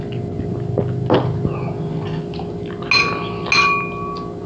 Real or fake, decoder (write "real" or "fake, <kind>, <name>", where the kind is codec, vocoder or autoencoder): real